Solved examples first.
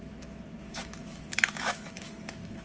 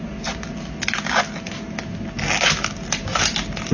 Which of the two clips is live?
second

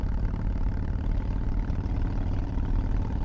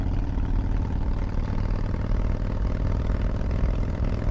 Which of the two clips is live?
second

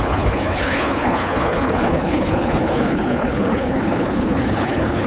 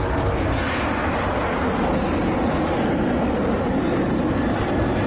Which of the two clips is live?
second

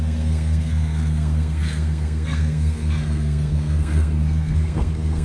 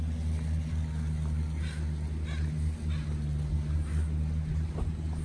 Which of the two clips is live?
second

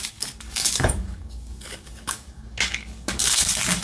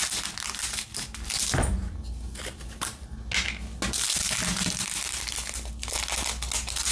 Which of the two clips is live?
second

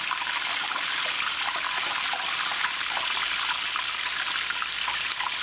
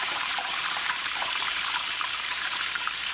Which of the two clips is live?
first